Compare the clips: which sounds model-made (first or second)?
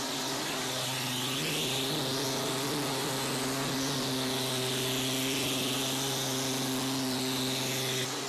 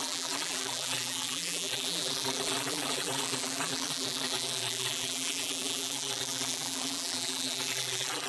second